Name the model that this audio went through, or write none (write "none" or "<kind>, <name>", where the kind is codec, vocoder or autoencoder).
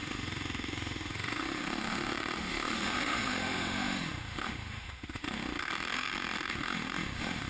autoencoder, DAC-VAE